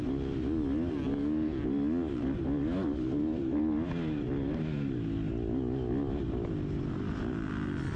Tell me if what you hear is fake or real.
real